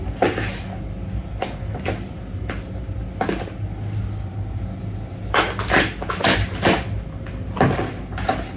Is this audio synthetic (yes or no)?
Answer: no